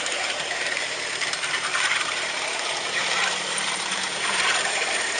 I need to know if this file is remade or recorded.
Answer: remade